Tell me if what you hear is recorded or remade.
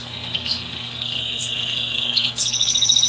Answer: remade